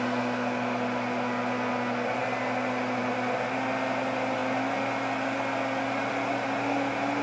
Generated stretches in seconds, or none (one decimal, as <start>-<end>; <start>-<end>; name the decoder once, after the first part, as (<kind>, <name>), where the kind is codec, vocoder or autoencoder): none